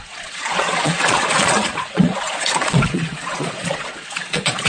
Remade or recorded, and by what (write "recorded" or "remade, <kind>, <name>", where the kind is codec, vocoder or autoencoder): remade, vocoder, Vocos